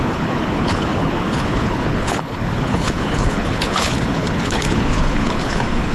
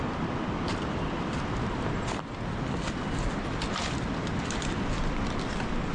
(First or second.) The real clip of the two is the second